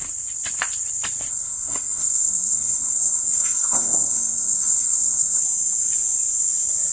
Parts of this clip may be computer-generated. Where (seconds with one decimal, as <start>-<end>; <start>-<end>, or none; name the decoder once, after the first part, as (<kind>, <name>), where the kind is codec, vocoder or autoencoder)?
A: 1.3-5.4 (codec, SNAC)